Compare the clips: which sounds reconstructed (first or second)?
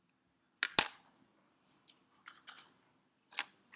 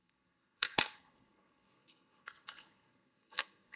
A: second